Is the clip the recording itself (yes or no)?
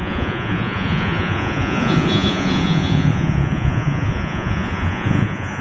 no